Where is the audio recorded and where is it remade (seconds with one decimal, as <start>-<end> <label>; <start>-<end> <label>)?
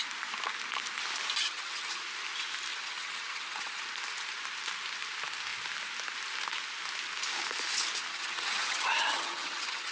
0.0-1.4 recorded; 1.4-2.0 remade; 2.0-2.7 recorded; 2.7-3.8 remade; 3.8-8.1 recorded; 8.1-9.9 remade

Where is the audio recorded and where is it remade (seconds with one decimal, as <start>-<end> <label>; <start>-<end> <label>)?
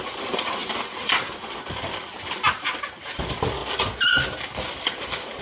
0.0-5.4 recorded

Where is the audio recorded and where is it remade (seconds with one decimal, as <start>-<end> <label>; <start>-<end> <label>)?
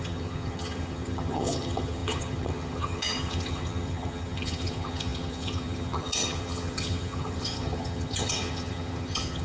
0.0-9.4 remade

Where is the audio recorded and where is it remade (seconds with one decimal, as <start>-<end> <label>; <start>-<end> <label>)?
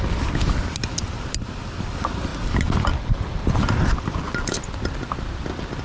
0.0-5.8 recorded